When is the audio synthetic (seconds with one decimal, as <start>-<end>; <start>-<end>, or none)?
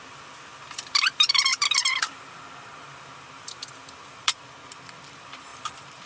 0.0-6.1